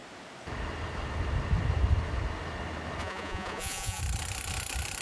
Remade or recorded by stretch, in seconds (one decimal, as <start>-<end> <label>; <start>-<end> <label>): 0.0-3.0 recorded; 3.0-4.0 remade; 4.0-5.0 recorded